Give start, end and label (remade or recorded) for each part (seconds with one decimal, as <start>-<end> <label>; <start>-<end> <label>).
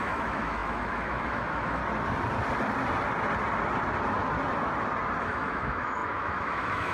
0.0-1.8 remade; 1.8-5.2 recorded; 5.2-6.9 remade